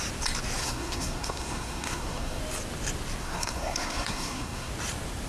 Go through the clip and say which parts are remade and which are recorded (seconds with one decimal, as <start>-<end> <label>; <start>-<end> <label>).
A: 0.0-0.6 recorded; 0.6-2.4 remade; 2.4-3.2 recorded; 3.2-4.7 remade; 4.7-5.3 recorded